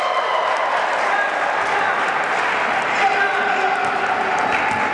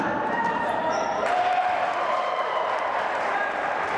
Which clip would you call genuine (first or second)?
first